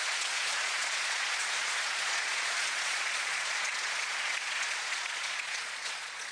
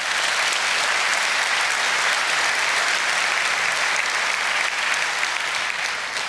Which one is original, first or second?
second